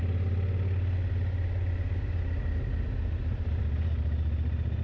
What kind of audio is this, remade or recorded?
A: recorded